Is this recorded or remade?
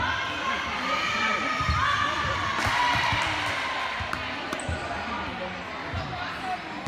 recorded